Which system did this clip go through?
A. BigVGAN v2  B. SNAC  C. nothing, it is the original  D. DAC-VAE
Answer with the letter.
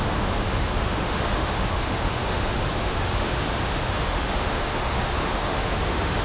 D